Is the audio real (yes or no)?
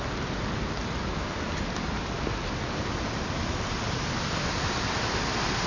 yes